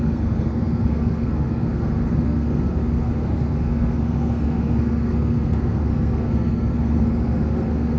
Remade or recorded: remade